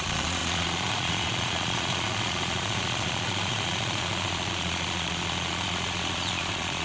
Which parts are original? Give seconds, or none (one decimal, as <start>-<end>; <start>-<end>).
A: none